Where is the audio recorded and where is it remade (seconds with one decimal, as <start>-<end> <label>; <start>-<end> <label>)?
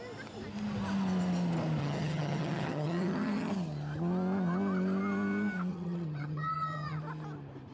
0.0-1.8 recorded; 1.8-3.5 remade; 3.5-5.7 recorded; 5.7-7.0 remade; 7.0-7.7 recorded